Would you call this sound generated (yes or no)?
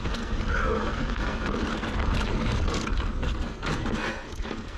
yes